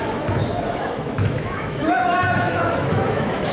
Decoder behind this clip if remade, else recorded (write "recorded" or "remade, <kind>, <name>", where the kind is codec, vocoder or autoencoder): remade, autoencoder, DAC-VAE